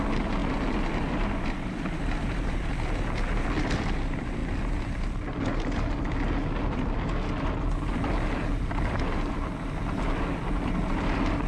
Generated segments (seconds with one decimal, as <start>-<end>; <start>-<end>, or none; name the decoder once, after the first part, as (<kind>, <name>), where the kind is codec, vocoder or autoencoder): none